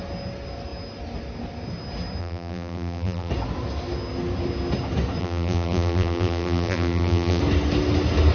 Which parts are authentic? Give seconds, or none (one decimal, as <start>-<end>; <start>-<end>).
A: 0.0-2.2; 3.3-5.2; 7.4-8.3